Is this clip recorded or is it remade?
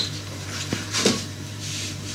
remade